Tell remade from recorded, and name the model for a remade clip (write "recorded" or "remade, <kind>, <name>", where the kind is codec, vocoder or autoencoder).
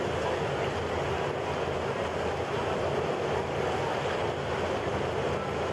recorded